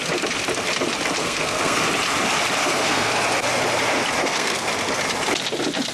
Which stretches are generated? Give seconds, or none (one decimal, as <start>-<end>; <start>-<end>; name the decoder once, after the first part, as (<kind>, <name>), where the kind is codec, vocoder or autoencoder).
1.2-1.8 (codec, SNAC); 2.6-3.1; 4.2-4.7

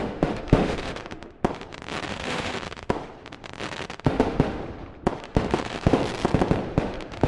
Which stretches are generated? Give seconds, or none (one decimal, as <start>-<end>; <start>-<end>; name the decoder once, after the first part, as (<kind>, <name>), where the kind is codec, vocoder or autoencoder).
0.0-1.4 (autoencoder, DAC-VAE); 2.1-3.0; 3.6-4.6; 5.2-6.0; 6.8-7.3

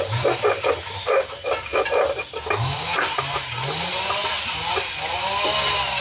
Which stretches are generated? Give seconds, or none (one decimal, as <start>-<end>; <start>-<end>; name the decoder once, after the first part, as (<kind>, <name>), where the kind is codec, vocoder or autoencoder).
none

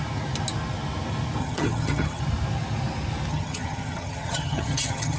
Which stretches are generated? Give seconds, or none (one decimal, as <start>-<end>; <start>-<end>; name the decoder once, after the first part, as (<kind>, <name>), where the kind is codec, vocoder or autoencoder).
1.4-2.2 (vocoder, HiFi-GAN); 3.3-5.2

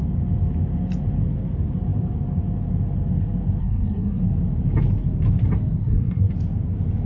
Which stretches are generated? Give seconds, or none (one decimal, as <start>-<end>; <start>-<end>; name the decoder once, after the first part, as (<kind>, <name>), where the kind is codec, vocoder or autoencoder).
3.6-4.2 (codec, SNAC); 5.8-6.3

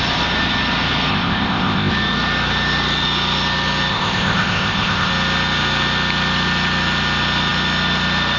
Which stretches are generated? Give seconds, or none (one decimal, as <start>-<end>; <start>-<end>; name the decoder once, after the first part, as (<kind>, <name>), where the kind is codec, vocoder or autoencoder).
1.1-1.9 (codec, ZipCodec); 3.9-5.1